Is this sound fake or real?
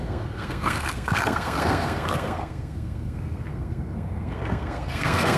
fake